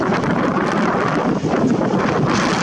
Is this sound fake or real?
real